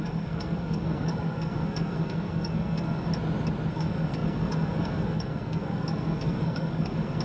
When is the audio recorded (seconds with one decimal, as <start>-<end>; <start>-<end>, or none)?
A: 3.1-3.7